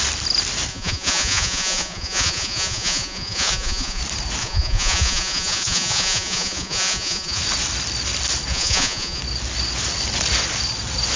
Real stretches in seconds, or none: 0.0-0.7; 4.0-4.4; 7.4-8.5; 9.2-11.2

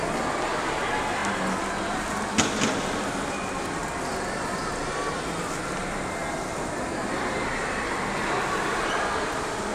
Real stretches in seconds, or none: 0.0-9.7

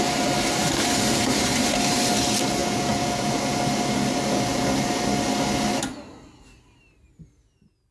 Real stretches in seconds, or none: 0.0-2.6; 3.4-7.9

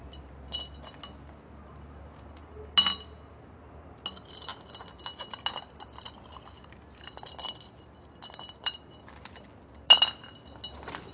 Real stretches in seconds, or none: 0.0-11.1